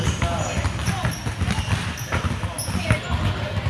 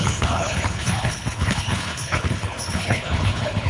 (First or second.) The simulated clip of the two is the second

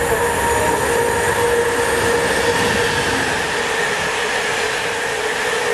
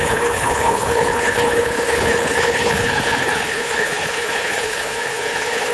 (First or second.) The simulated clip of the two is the second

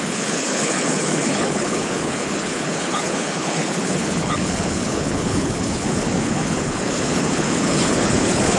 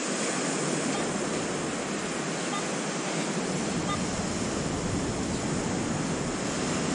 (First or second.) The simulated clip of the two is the first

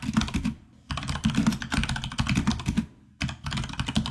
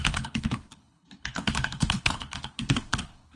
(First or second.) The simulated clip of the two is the second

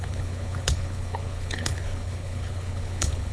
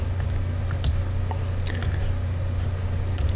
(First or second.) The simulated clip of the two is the first